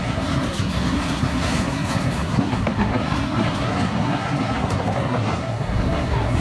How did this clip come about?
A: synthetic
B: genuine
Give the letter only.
A